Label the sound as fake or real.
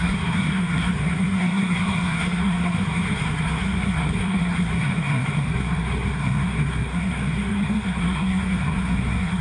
fake